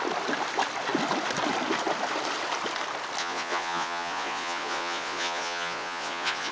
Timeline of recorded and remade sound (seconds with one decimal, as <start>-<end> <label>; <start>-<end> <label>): 0.0-3.2 recorded; 3.2-6.5 remade